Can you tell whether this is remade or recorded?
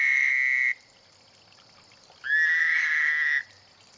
recorded